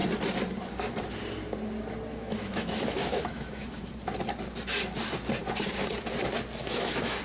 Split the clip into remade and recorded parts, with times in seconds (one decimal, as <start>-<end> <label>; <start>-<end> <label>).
0.0-2.1 recorded; 2.1-3.8 remade; 3.8-6.6 recorded; 6.6-7.2 remade